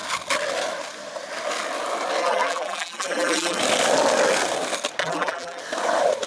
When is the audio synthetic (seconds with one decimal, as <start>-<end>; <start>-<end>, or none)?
2.2-3.6; 5.0-5.6